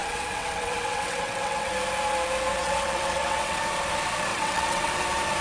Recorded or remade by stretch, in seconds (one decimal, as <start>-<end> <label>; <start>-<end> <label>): 0.0-1.7 remade; 1.7-2.6 recorded; 2.6-3.6 remade; 3.6-4.3 recorded; 4.3-4.9 remade; 4.9-5.4 recorded